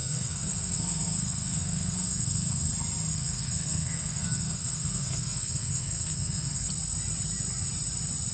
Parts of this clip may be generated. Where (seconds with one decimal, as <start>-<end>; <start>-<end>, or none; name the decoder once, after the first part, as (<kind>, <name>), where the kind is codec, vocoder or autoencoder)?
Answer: 0.0-2.7 (codec, SNAC); 3.1-6.7